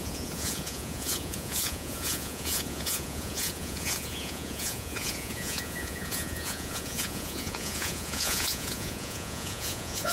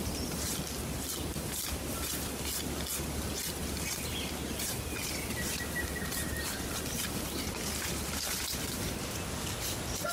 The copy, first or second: first